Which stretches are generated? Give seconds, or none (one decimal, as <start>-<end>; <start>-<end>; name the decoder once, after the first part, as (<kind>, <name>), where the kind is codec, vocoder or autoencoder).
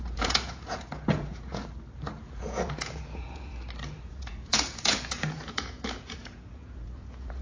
0.0-1.6 (vocoder, Vocos); 2.2-3.5; 4.0-7.4